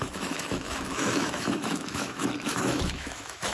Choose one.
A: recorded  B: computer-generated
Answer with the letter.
B